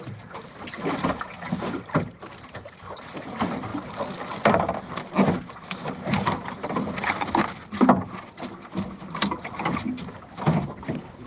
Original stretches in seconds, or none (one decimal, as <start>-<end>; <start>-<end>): 0.0-11.3

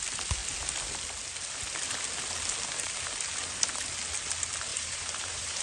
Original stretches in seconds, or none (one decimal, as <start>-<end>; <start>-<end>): 0.0-4.7

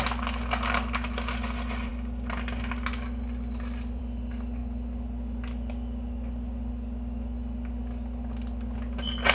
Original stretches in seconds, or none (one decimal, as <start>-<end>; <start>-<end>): 0.0-9.3

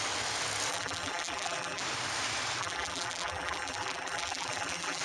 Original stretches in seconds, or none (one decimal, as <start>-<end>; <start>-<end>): 0.0-0.7; 1.8-2.6

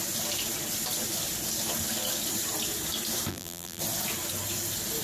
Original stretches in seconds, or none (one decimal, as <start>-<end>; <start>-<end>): 0.0-3.3; 3.8-5.0